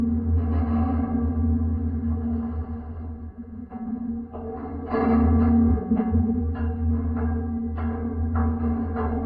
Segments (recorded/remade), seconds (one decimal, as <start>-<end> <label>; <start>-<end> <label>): 0.0-3.3 recorded; 3.3-4.1 remade; 4.1-5.7 recorded; 5.7-6.4 remade; 6.4-9.3 recorded